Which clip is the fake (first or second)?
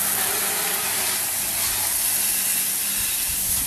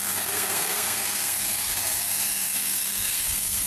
second